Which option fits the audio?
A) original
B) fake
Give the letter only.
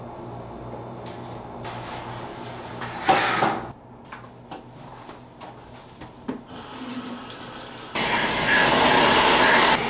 A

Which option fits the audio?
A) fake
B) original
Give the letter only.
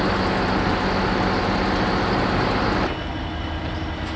B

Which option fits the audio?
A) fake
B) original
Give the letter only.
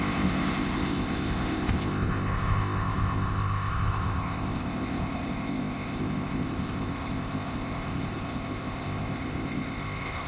A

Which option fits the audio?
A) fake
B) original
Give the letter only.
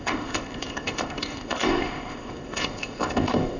A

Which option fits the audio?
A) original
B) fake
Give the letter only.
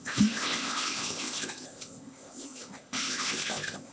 B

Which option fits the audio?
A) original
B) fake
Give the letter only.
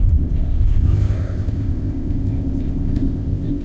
B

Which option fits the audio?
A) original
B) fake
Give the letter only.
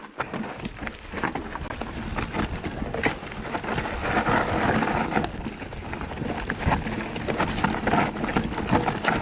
A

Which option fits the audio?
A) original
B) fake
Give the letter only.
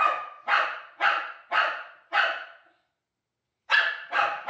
A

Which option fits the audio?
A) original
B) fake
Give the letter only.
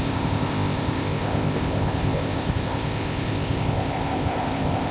B